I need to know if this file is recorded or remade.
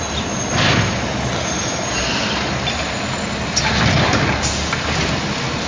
recorded